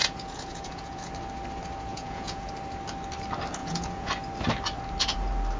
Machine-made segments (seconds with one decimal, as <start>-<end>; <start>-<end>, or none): 0.0-1.1; 1.9-2.5; 3.6-4.1